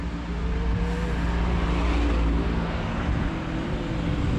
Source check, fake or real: real